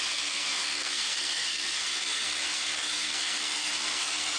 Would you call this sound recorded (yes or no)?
no